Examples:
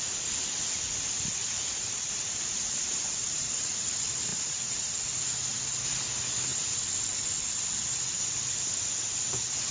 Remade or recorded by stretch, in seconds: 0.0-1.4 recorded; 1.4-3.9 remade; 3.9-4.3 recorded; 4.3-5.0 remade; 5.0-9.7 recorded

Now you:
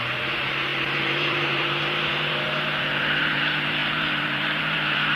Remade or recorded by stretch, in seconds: 0.0-5.2 remade

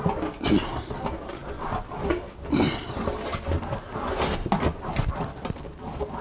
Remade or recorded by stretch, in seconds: 0.0-6.2 recorded

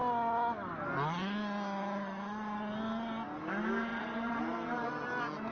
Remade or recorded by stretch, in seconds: 0.0-3.9 recorded; 3.9-4.9 remade; 4.9-5.5 recorded

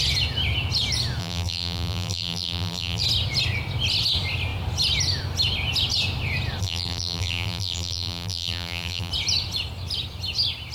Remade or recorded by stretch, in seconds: 0.0-1.2 recorded; 1.2-3.0 remade; 3.0-6.6 recorded; 6.6-9.1 remade; 9.1-10.7 recorded

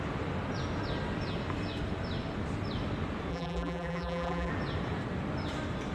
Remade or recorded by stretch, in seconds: 0.0-3.3 recorded; 3.3-4.5 remade; 4.5-5.9 recorded

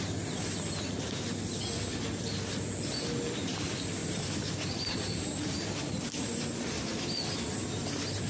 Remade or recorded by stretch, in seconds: 0.0-4.0 recorded; 4.0-5.5 remade; 5.5-7.6 recorded; 7.6-8.3 remade